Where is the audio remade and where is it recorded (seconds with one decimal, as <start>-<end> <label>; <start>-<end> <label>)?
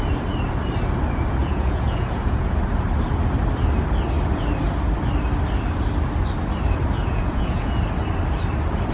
0.0-1.4 recorded; 1.4-2.6 remade; 2.6-7.0 recorded; 7.0-7.8 remade; 7.8-8.9 recorded